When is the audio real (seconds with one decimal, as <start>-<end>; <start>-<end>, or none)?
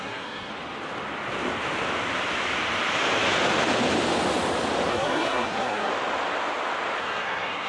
0.5-4.9; 5.9-7.0